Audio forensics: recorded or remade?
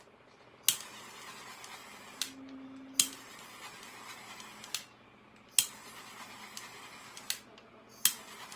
recorded